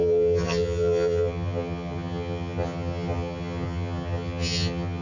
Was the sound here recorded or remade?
remade